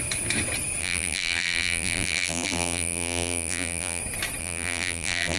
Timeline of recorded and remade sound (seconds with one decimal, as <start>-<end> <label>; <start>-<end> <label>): 0.0-0.8 recorded; 0.8-4.0 remade; 4.0-4.4 recorded; 4.4-5.4 remade